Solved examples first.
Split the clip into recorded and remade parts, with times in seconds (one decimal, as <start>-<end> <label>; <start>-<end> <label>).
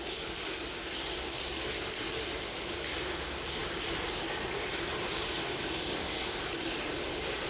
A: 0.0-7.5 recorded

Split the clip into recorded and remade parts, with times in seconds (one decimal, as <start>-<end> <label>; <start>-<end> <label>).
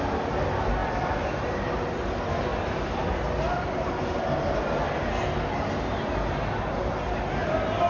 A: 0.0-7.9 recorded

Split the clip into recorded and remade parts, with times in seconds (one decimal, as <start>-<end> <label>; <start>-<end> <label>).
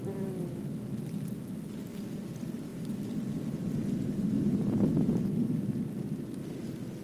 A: 0.0-7.0 recorded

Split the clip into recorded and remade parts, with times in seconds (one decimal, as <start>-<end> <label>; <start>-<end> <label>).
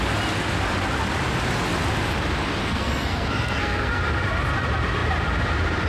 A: 0.0-2.6 recorded; 2.6-4.0 remade; 4.0-5.9 recorded